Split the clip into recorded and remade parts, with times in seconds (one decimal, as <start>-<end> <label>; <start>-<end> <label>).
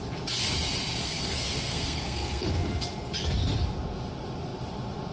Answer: 0.0-1.0 recorded; 1.0-2.8 remade; 2.8-5.1 recorded